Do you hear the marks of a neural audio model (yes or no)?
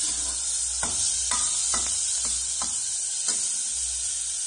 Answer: no